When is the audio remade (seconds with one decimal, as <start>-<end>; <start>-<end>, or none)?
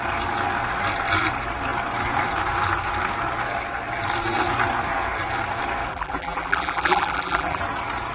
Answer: 5.9-7.6